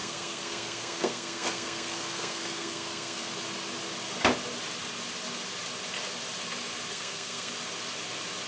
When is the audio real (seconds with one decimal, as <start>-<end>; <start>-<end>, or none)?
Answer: 3.3-6.9; 7.5-8.5